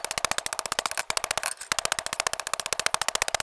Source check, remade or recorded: recorded